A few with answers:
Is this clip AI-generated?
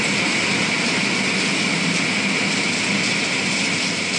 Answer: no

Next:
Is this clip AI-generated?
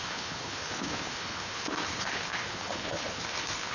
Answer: yes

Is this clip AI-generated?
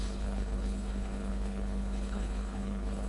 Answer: yes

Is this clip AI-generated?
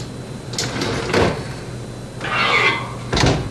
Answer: no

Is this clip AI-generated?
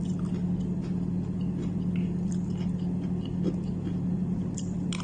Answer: no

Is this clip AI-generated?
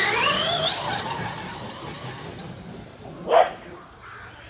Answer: no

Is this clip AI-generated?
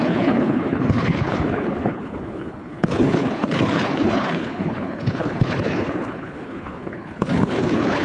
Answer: yes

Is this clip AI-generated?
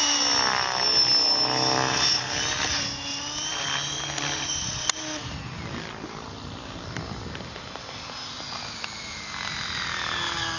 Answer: no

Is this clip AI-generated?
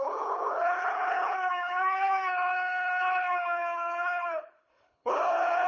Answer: yes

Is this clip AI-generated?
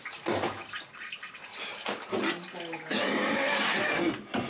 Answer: no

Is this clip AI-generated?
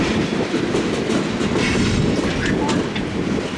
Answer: no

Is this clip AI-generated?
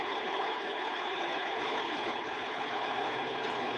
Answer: yes